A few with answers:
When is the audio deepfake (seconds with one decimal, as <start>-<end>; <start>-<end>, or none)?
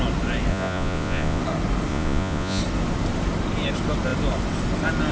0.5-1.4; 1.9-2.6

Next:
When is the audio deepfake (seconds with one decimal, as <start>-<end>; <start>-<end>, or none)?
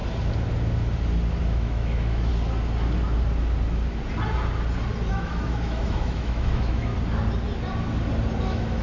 1.4-2.3; 5.1-6.9; 8.4-8.8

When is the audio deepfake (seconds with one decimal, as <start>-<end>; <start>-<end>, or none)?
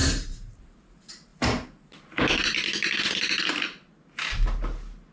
0.0-0.6